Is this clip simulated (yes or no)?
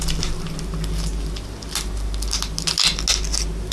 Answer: no